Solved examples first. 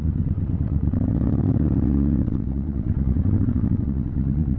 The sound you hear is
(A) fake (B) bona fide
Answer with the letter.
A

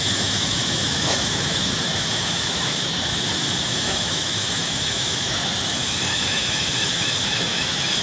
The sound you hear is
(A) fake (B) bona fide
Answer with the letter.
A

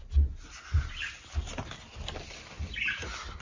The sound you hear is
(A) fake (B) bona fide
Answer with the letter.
B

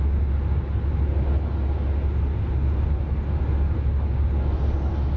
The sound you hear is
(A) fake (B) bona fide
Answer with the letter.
B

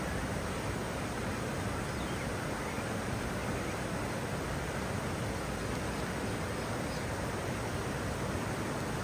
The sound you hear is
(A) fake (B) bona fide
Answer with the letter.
B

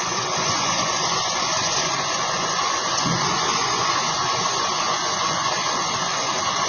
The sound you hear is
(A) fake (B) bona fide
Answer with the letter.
A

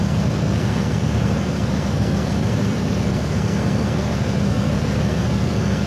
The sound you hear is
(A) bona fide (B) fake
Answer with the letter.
B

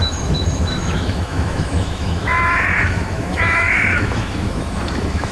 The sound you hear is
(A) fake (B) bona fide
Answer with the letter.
A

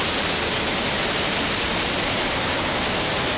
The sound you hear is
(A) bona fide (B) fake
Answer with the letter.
A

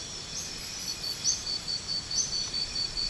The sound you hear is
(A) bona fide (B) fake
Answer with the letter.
B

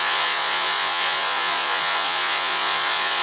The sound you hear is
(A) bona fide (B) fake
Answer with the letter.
B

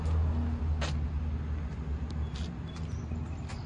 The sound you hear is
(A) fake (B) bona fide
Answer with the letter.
B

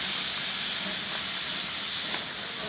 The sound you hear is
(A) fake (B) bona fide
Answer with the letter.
B